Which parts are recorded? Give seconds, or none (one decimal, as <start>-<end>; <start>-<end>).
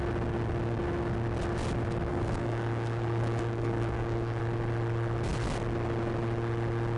0.0-2.1; 4.4-7.0